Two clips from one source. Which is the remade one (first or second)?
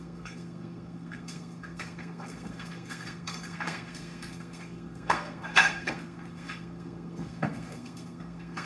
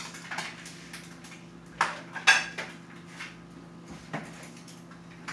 first